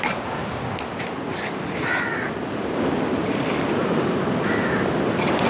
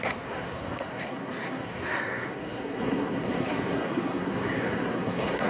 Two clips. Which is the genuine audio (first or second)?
first